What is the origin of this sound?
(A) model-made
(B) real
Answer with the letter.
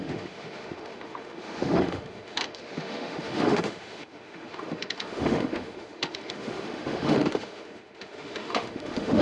A